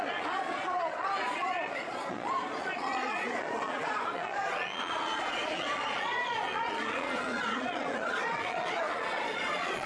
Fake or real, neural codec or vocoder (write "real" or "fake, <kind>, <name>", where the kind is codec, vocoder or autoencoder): fake, vocoder, Vocos